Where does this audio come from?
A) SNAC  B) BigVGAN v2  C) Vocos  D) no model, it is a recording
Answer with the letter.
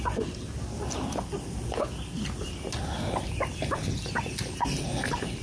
D